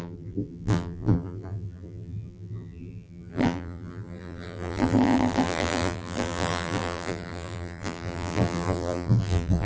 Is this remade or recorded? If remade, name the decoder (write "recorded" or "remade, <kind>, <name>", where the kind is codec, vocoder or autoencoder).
remade, vocoder, BigVGAN v2